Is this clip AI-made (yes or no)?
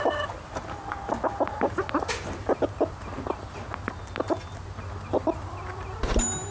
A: no